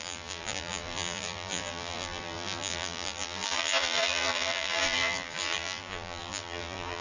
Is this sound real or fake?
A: fake